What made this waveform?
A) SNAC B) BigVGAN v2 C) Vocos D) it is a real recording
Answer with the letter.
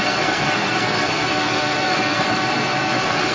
A